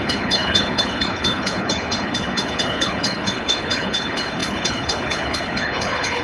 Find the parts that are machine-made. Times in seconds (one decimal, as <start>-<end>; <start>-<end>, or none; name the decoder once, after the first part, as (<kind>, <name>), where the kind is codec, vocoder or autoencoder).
0.0-6.2 (codec, HILCodec)